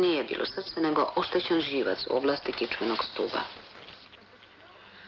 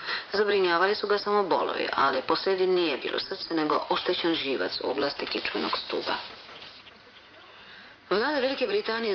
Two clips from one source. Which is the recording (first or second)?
first